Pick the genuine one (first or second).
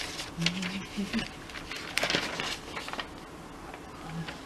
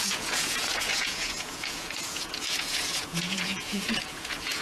first